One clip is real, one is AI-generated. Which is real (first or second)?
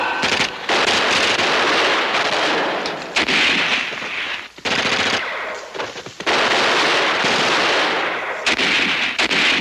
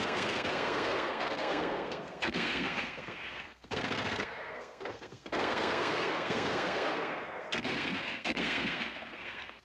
first